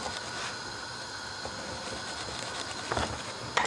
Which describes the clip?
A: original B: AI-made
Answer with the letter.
A